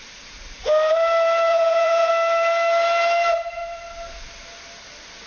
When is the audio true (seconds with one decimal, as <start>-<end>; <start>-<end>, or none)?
0.0-1.5; 2.1-5.3